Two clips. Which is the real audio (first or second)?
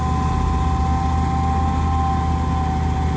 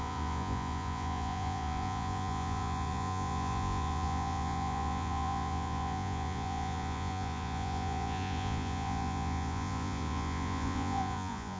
first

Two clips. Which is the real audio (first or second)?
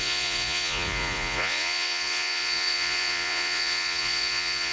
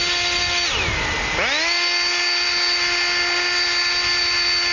second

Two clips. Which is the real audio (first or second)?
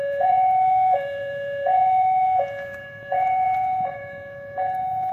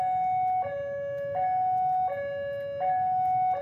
second